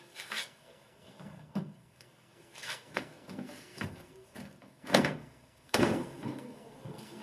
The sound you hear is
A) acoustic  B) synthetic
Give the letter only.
B